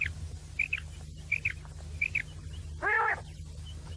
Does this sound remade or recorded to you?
recorded